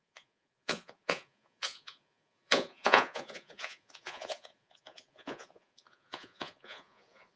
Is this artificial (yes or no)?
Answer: yes